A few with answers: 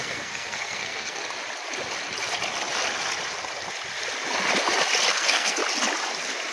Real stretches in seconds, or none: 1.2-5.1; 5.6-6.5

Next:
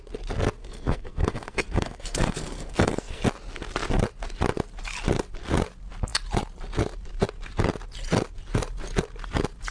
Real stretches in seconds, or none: 0.0-0.6; 3.2-9.7